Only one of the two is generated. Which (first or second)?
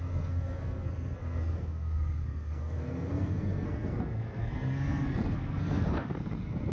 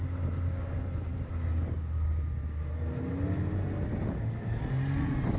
first